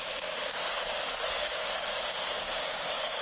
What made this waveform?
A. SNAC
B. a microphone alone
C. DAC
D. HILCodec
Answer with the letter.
C